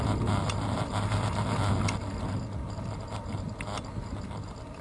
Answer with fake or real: real